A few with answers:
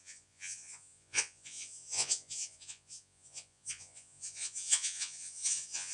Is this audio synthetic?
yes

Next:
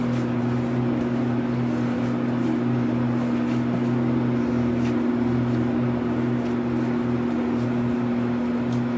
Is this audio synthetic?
no